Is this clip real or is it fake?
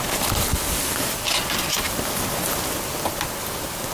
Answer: real